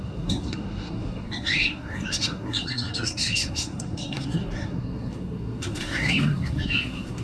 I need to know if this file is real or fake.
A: fake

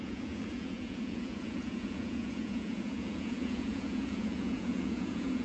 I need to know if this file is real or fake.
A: fake